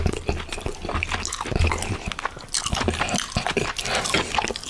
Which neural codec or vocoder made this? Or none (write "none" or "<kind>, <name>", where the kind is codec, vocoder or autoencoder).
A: none